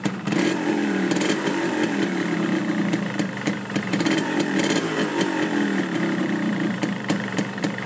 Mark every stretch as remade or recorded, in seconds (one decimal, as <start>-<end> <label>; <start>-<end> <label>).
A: 0.0-5.1 remade; 5.1-6.2 recorded; 6.2-7.9 remade